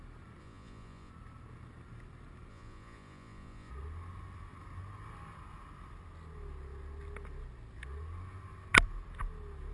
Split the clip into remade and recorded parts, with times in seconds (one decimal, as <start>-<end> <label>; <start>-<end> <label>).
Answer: 0.0-0.4 recorded; 0.4-1.1 remade; 1.1-2.5 recorded; 2.5-3.7 remade; 3.7-9.7 recorded